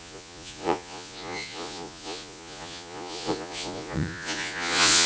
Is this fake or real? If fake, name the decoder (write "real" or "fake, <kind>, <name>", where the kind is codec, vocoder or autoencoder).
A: fake, vocoder, Vocos